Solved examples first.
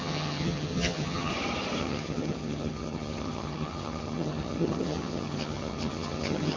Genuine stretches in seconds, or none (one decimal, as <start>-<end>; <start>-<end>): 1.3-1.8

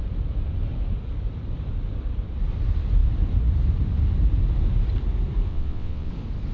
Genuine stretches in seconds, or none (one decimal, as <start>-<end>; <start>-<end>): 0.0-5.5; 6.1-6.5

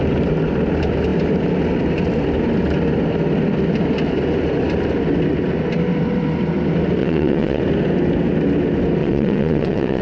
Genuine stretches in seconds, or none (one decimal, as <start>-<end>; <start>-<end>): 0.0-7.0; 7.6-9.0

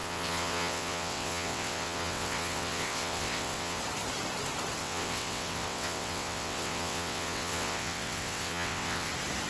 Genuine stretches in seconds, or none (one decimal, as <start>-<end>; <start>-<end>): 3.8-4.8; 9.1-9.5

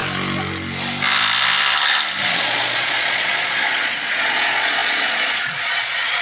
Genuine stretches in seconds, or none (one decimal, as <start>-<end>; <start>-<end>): 0.0-2.2

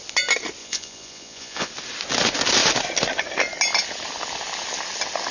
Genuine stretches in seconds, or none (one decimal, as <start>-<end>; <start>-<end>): 0.0-0.6; 1.7-5.3

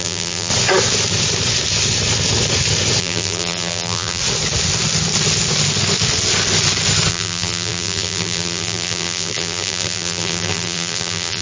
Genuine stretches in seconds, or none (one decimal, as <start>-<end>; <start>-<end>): 0.5-3.0; 4.2-7.1